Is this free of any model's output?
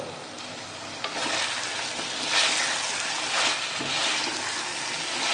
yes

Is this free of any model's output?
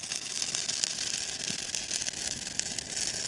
yes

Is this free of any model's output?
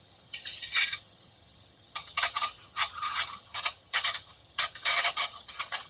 no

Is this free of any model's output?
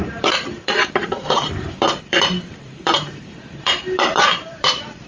no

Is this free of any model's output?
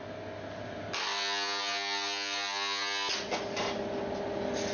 yes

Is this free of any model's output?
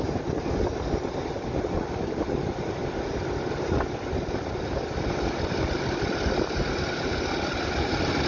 yes